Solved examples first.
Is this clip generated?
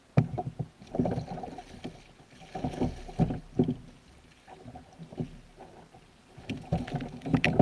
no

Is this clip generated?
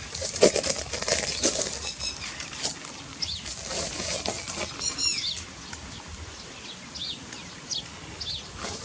no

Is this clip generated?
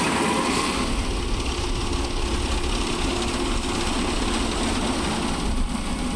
no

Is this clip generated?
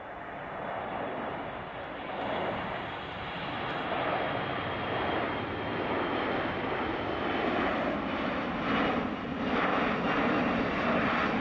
no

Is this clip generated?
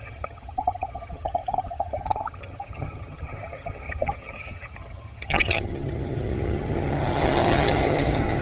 yes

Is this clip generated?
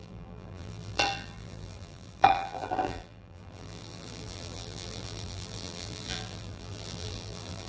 yes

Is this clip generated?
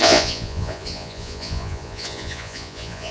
yes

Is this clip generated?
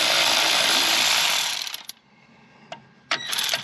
yes